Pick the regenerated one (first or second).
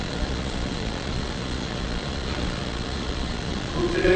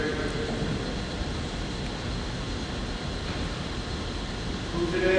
first